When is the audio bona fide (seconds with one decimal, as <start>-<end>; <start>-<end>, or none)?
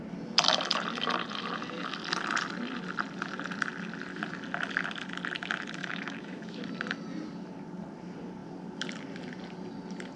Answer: 0.0-5.8; 6.6-10.2